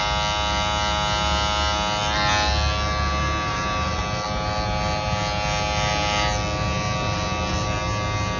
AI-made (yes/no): no